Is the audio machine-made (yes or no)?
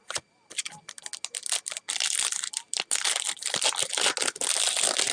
no